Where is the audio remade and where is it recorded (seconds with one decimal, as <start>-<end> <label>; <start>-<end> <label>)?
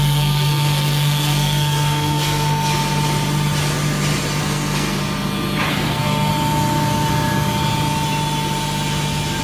0.0-2.8 remade; 2.8-4.4 recorded; 4.4-5.0 remade; 5.0-5.7 recorded; 5.7-6.3 remade; 6.3-9.4 recorded